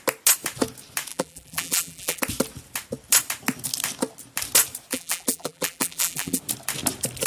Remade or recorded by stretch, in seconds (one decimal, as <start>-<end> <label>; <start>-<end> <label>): 0.0-1.1 recorded; 1.1-2.2 remade; 2.2-4.9 recorded; 4.9-6.4 remade; 6.4-7.3 recorded

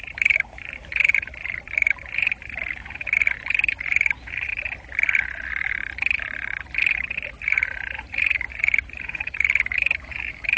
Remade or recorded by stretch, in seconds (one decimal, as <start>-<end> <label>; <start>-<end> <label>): 0.0-4.5 remade; 4.5-7.3 recorded; 7.3-10.6 remade

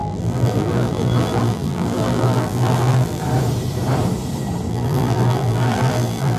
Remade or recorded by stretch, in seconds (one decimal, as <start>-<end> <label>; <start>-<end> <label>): 0.0-3.2 remade; 3.2-4.7 recorded; 4.7-6.4 remade

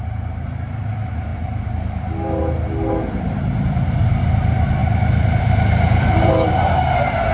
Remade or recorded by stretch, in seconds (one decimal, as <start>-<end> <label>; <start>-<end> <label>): 0.0-7.3 remade

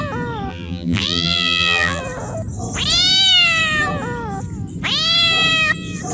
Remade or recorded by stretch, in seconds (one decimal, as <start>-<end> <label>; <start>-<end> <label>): 0.0-0.5 recorded; 0.5-2.0 remade; 2.0-6.1 recorded

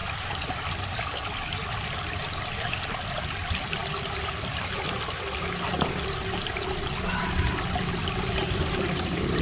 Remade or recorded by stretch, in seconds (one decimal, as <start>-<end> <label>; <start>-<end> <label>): 0.0-0.5 recorded; 0.5-3.8 remade; 3.8-8.0 recorded; 8.0-9.4 remade

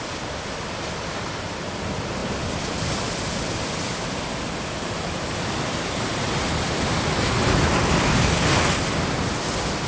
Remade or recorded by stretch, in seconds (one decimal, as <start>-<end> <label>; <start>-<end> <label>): 0.0-2.2 recorded; 2.2-7.4 remade; 7.4-9.9 recorded